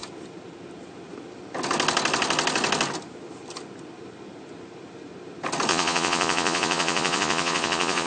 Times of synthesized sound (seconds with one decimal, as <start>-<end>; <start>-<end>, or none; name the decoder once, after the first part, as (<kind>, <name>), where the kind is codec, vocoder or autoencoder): 5.7-8.1 (vocoder, Vocos)